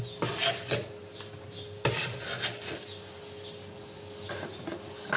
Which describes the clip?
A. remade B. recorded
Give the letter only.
B